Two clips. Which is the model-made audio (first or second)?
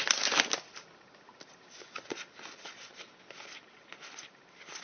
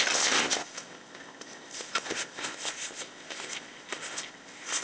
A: second